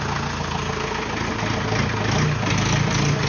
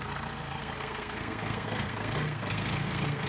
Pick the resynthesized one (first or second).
second